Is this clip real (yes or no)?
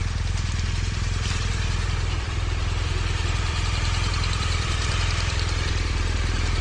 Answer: no